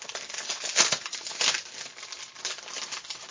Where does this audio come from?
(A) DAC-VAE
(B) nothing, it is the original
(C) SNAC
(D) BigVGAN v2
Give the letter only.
B